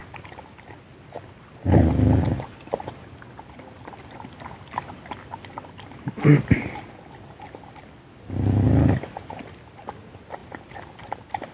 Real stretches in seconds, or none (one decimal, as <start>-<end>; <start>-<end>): 0.0-11.5